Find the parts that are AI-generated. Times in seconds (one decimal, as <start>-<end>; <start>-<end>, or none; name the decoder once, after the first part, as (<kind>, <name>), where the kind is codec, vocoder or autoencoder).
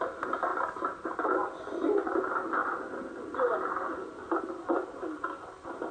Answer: none